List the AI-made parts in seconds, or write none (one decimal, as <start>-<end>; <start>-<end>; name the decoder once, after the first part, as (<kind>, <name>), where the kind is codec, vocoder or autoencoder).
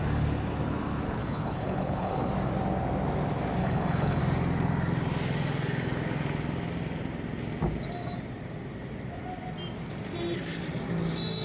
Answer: 1.2-2.3 (codec, HILCodec); 3.6-4.2